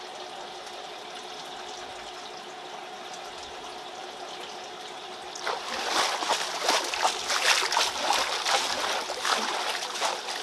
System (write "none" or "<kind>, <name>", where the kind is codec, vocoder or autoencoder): none